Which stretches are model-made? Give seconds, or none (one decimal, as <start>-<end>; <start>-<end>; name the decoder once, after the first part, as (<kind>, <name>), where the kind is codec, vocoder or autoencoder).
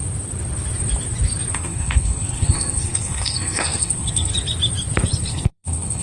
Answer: 1.5-4.3 (codec, SNAC); 5.3-6.0